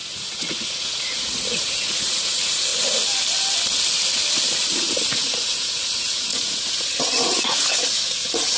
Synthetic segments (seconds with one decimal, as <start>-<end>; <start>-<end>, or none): 0.0-2.7; 4.7-8.6